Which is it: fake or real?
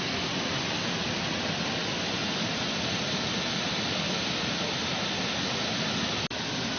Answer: real